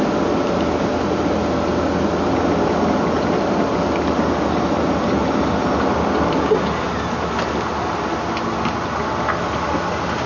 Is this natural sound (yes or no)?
yes